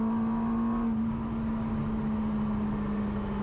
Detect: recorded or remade recorded